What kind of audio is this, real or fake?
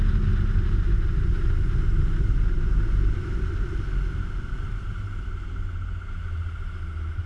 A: real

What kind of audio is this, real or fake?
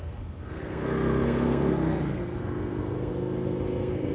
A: fake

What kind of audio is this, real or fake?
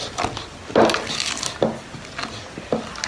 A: real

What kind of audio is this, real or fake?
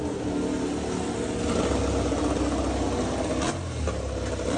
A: real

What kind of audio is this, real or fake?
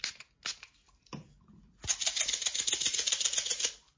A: real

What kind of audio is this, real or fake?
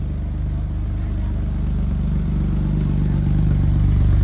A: real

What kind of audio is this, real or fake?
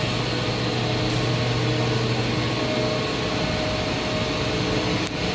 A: real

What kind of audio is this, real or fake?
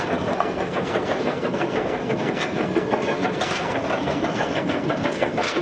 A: fake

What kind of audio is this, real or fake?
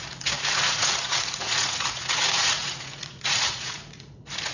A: fake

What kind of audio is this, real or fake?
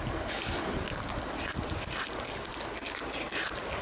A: real